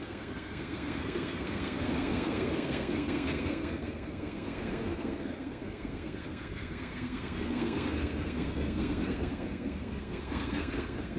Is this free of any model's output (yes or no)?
no